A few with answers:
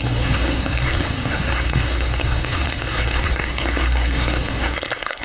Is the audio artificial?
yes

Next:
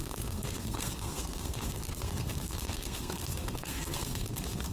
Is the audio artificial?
yes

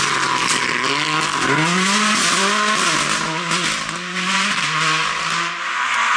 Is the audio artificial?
no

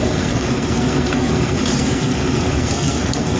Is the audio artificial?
yes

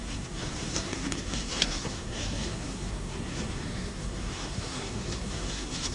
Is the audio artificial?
yes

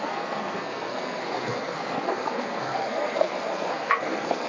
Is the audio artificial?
yes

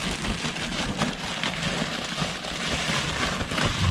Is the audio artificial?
no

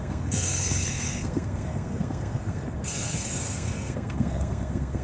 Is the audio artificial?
yes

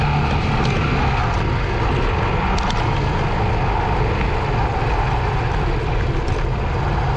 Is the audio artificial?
no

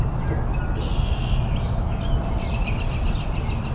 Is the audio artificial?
no